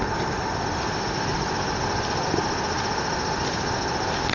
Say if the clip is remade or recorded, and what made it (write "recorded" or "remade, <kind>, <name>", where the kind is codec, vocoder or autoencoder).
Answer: recorded